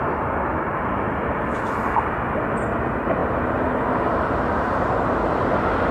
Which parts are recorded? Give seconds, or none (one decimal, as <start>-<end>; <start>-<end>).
0.0-0.5; 1.3-5.9

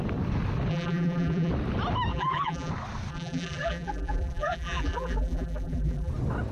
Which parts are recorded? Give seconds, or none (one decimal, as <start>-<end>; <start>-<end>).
0.0-0.7; 1.5-2.1; 2.7-3.1; 6.1-6.5

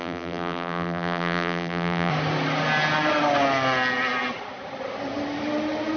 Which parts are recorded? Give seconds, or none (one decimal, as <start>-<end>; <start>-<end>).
2.1-6.0

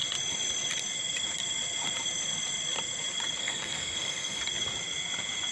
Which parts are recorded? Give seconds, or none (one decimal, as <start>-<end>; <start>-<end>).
0.0-3.4; 4.4-5.5

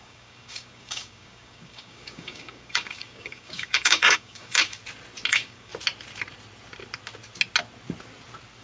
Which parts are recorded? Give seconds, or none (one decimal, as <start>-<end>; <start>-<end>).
4.8-5.3; 5.7-8.6

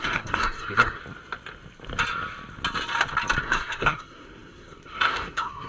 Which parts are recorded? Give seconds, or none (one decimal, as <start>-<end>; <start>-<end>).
1.0-3.4